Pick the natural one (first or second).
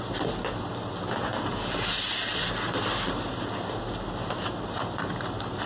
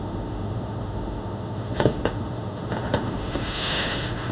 first